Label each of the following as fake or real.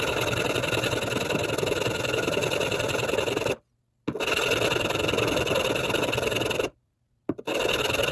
real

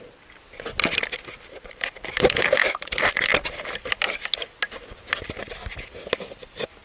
real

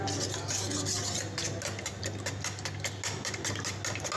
real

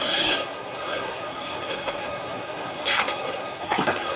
fake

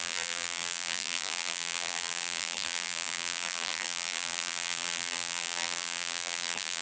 fake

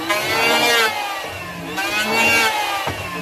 real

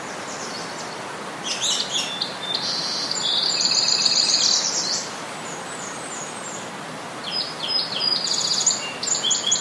real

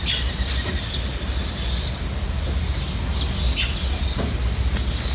real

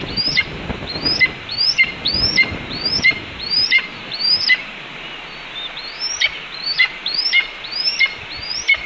fake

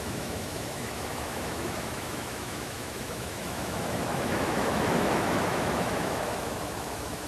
fake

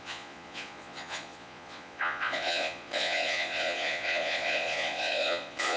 fake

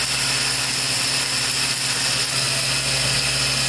real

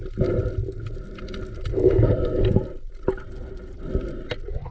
real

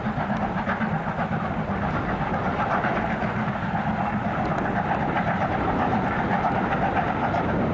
real